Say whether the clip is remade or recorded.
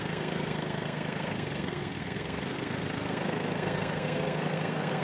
remade